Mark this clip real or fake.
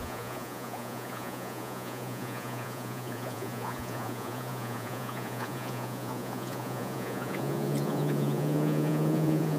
fake